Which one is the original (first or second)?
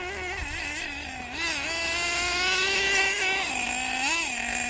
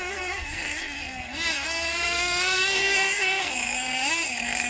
first